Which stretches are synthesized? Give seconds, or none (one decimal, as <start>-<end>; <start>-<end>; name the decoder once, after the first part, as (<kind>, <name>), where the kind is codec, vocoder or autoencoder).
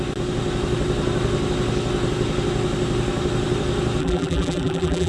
4.0-5.1 (vocoder, BigVGAN v2)